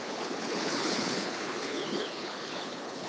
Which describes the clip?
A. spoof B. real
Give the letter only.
A